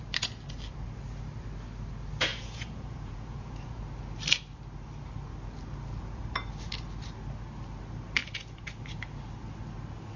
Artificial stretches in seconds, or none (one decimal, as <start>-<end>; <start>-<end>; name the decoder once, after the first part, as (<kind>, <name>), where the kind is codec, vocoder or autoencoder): 2.3-3.8 (vocoder, Vocos); 8.2-8.8